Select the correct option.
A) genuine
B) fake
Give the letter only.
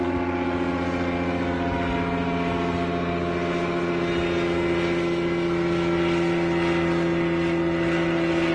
A